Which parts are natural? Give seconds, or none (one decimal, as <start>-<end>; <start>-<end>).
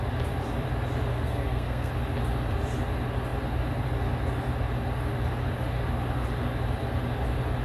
0.0-1.1; 1.9-7.6